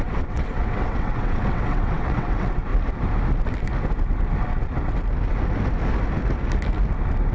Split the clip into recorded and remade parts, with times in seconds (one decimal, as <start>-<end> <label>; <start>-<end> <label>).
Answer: 0.0-2.7 remade; 2.7-7.3 recorded